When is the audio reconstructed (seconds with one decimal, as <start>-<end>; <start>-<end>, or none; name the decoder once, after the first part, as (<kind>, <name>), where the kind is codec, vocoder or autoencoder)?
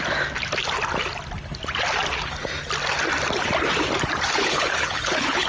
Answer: 4.4-5.5 (codec, HILCodec)